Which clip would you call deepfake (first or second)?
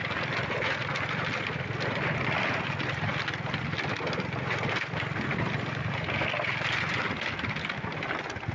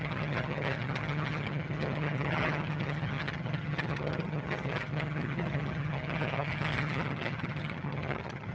second